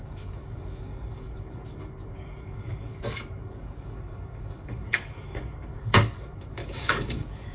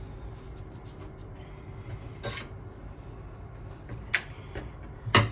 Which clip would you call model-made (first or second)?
first